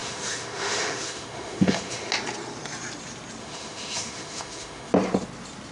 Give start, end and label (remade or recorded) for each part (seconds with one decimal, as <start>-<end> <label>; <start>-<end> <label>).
0.0-2.1 remade; 2.1-3.4 recorded; 3.4-4.9 remade; 4.9-5.7 recorded